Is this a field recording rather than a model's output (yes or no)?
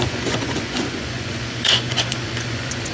no